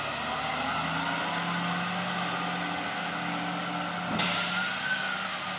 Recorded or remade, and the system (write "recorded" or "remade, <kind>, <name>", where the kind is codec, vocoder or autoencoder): recorded